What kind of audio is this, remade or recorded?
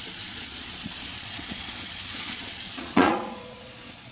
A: remade